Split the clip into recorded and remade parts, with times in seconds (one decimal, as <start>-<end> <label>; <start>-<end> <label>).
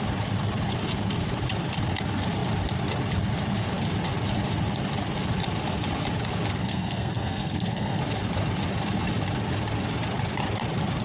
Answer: 0.0-6.6 recorded; 6.6-8.0 remade; 8.0-11.0 recorded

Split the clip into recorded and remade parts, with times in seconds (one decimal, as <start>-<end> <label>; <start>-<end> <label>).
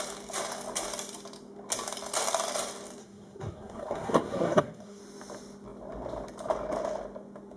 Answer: 0.0-3.0 recorded; 3.0-5.0 remade; 5.0-7.6 recorded